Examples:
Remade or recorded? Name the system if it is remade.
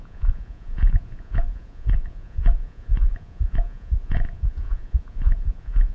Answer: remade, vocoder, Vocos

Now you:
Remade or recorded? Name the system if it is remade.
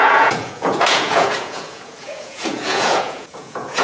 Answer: remade, vocoder, Vocos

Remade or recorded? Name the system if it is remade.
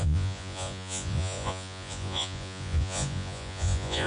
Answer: remade, vocoder, Vocos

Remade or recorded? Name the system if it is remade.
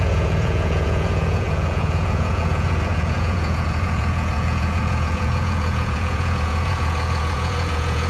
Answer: remade, vocoder, Vocos